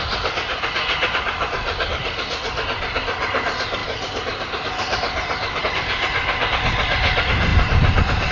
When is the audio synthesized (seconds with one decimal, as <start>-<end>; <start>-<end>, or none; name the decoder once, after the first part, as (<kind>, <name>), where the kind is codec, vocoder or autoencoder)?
3.8-5.6 (vocoder, BigVGAN v2); 7.5-8.3